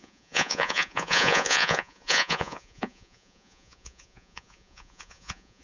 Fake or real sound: fake